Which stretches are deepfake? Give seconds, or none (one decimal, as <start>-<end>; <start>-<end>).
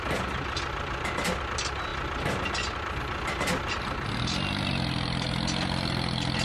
none